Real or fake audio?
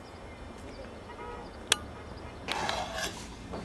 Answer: real